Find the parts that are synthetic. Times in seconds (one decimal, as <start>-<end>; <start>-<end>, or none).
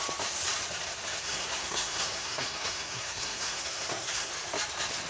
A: 1.2-4.3